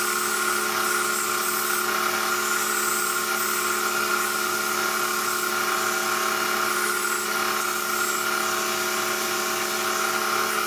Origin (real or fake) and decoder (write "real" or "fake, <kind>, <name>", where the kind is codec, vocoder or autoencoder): real